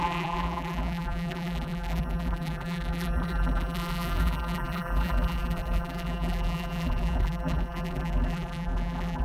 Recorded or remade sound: remade